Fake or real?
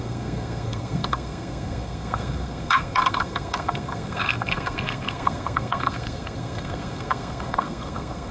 fake